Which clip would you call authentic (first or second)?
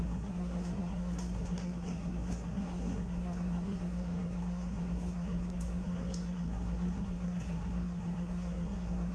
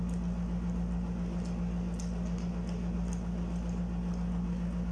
second